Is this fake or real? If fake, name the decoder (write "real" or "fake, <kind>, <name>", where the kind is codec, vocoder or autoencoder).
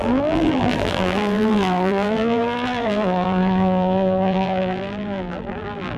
fake, vocoder, BigVGAN v2